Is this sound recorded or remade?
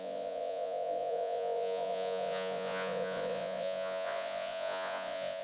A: remade